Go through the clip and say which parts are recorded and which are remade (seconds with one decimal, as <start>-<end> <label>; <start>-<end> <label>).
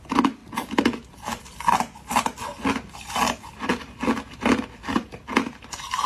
0.0-6.1 recorded